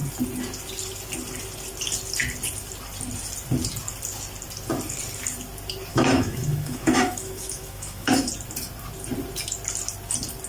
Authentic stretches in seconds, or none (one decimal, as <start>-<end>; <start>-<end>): 0.0-5.9; 8.3-10.5

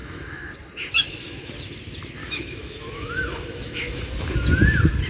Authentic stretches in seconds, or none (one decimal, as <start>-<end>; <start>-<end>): 0.5-1.0; 1.5-2.2; 4.0-5.1

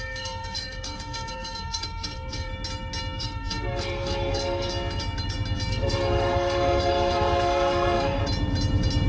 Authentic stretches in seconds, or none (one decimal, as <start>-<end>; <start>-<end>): 2.5-3.2; 4.7-5.7; 8.2-9.1

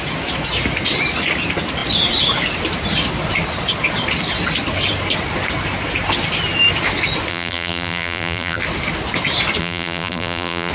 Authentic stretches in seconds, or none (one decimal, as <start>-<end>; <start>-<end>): 0.0-7.3; 8.6-9.6

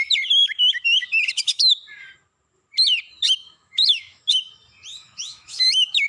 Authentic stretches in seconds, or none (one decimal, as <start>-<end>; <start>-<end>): 0.0-0.4; 1.7-3.4; 4.5-4.9

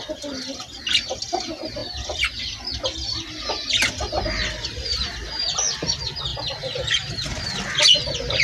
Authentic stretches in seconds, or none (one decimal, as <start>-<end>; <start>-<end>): 0.0-1.8; 5.4-6.3; 7.4-8.4

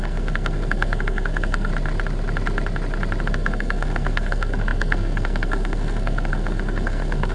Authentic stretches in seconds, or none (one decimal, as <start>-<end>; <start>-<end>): 1.7-3.3